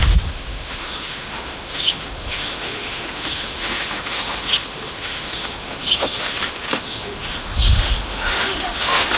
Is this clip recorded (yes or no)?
no